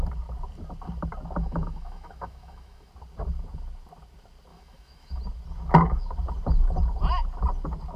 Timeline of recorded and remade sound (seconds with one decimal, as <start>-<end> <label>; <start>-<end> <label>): 0.0-1.4 recorded; 1.4-2.9 remade; 2.9-4.5 recorded; 4.5-5.2 remade; 5.2-8.0 recorded